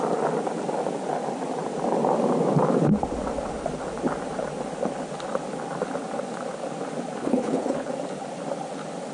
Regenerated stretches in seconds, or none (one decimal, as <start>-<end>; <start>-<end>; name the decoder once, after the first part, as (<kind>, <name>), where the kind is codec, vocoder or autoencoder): 7.2-7.9 (codec, HILCodec)